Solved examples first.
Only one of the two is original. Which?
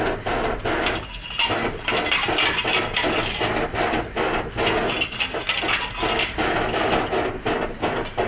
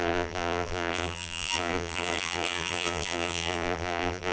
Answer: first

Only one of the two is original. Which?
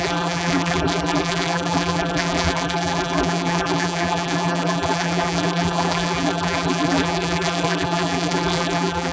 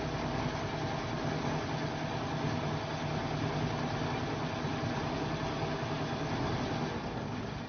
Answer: second